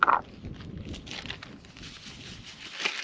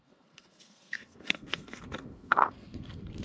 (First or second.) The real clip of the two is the first